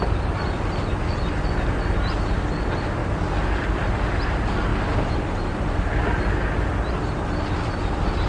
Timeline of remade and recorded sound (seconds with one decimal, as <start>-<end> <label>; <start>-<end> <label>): 0.0-8.3 recorded